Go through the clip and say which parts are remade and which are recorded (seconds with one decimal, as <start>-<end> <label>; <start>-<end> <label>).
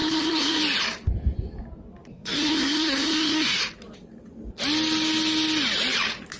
0.0-0.6 remade; 0.6-2.1 recorded; 2.1-3.6 remade; 3.6-6.4 recorded